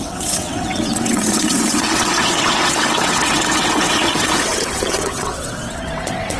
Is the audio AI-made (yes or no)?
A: yes